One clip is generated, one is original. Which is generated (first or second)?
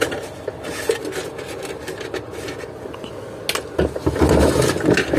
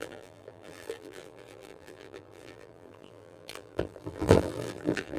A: second